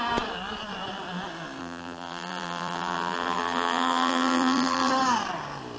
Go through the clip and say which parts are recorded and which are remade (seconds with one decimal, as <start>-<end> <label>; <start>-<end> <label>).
0.0-1.6 recorded; 1.6-4.9 remade; 4.9-5.8 recorded